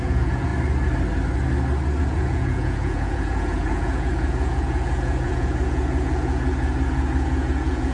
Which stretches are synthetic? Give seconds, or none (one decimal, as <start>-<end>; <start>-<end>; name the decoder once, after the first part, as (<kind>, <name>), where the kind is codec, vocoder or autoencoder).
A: 0.0-0.5 (vocoder, Vocos); 2.0-7.9